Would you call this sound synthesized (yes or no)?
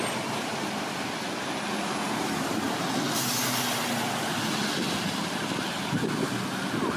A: no